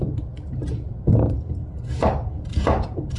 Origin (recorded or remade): remade